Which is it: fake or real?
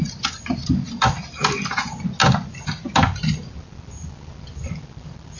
real